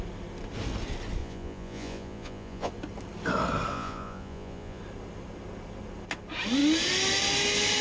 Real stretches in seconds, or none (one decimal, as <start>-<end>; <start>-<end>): 0.0-1.2; 2.7-3.7; 4.8-7.8